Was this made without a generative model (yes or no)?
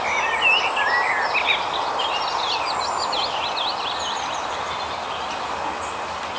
yes